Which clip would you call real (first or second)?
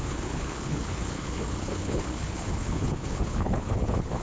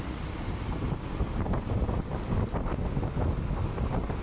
second